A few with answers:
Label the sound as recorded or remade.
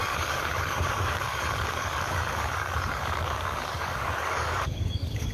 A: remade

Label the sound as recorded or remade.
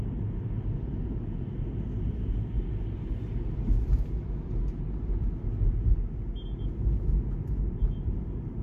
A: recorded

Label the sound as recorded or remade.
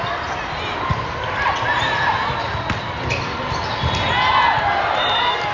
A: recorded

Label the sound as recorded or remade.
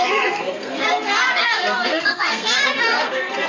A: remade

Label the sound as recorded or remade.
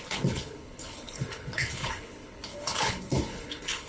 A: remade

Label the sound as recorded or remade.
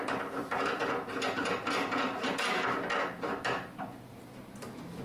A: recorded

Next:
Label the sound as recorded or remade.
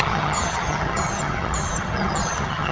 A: remade